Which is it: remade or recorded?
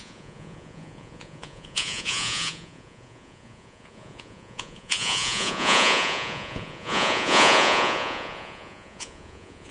remade